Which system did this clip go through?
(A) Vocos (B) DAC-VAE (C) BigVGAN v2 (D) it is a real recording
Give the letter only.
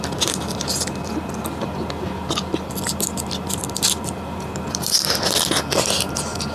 D